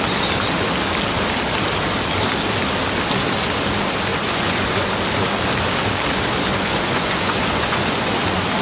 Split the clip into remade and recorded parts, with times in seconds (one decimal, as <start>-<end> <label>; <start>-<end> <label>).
0.0-4.1 recorded; 4.1-4.9 remade; 4.9-6.5 recorded; 6.5-8.1 remade; 8.1-8.6 recorded

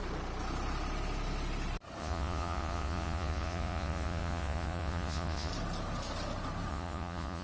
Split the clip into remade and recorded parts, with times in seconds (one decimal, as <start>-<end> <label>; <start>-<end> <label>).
0.0-2.0 recorded; 2.0-5.5 remade; 5.5-6.7 recorded; 6.7-7.4 remade